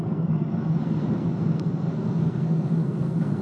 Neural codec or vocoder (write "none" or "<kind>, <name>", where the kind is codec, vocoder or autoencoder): codec, SNAC